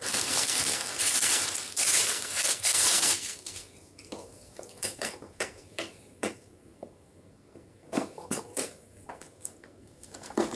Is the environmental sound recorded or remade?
remade